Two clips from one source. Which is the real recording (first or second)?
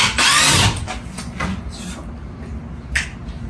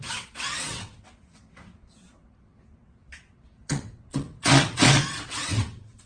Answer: first